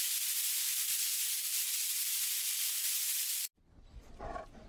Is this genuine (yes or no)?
yes